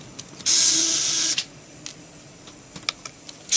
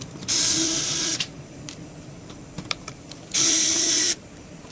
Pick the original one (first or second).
first